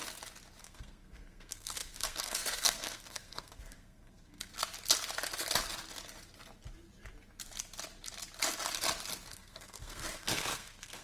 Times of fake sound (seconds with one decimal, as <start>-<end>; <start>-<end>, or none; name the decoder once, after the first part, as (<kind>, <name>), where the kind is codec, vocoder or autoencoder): 0.6-4.5 (codec, SNAC); 9.3-11.0